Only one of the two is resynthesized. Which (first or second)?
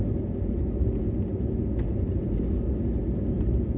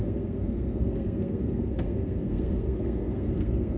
second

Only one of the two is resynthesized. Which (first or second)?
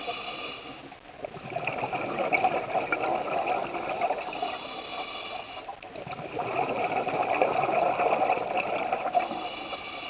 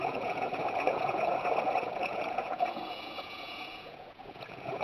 second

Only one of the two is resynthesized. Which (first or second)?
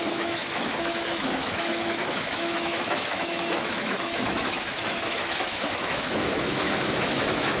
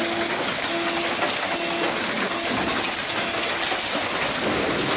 first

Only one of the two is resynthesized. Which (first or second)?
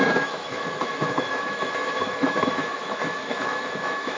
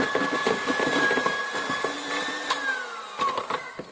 first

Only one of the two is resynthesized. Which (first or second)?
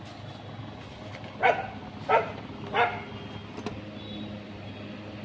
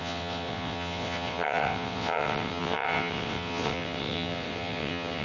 second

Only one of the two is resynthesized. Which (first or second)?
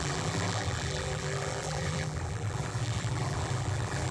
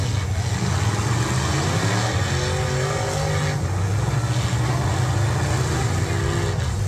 first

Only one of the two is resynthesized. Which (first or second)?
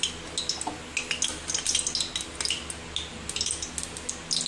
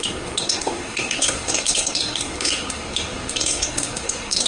second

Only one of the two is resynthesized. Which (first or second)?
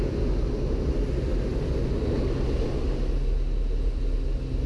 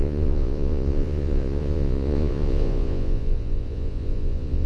second